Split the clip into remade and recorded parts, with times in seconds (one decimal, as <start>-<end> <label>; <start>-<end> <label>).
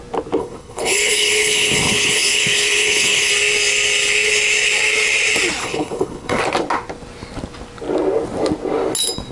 0.0-0.4 recorded; 0.4-3.3 remade; 3.3-5.6 recorded; 5.6-6.4 remade; 6.4-9.3 recorded